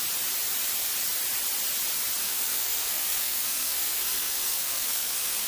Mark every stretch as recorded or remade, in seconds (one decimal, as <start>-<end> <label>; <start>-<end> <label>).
0.0-2.2 recorded; 2.2-5.5 remade